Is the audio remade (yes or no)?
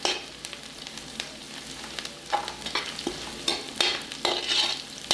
no